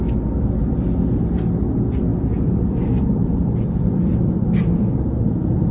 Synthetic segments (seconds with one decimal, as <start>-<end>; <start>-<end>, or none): 2.1-5.7